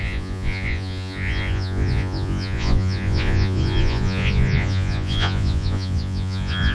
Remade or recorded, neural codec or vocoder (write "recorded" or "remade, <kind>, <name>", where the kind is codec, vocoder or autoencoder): remade, vocoder, Vocos